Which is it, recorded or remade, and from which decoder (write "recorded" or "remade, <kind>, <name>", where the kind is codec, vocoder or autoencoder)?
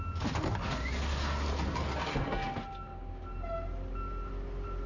recorded